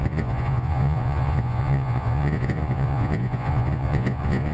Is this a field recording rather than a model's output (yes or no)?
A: no